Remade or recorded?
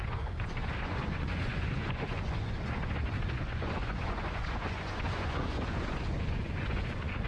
remade